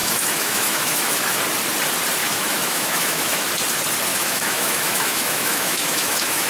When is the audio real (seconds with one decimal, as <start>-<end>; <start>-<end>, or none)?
1.4-2.2; 3.5-4.1